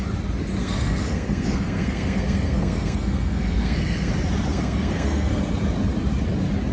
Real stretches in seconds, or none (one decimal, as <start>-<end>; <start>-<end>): 0.0-0.6; 4.1-4.5; 5.4-6.7